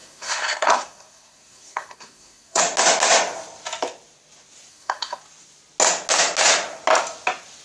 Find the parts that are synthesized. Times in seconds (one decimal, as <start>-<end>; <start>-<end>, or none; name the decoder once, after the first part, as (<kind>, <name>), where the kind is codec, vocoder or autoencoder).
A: 0.0-2.6 (codec, SNAC); 4.7-5.2